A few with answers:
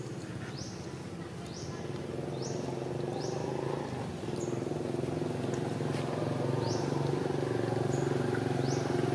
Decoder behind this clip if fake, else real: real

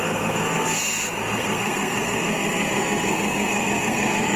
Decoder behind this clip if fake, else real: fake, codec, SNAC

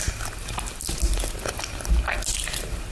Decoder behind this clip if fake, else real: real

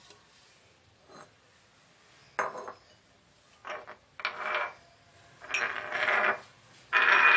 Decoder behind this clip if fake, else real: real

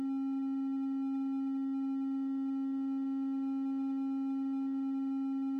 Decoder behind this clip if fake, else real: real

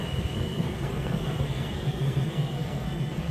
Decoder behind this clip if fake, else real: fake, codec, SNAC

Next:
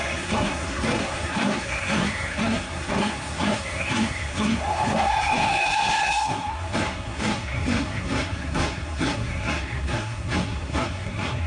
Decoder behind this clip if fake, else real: fake, codec, SNAC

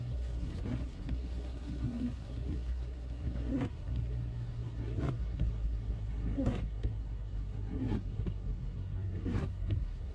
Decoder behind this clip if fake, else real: fake, codec, SNAC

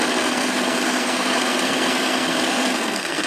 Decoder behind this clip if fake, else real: fake, codec, SNAC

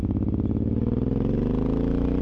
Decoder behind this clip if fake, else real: real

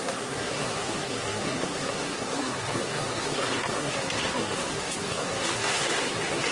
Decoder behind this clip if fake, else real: fake, codec, SNAC